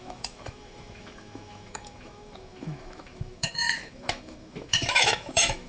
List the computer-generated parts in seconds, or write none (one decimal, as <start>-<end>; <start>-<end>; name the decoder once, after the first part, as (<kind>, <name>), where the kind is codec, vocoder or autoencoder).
0.0-5.7 (autoencoder, DAC-VAE)